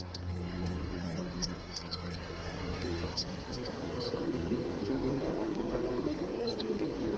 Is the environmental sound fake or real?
fake